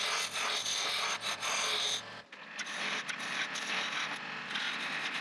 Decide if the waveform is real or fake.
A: real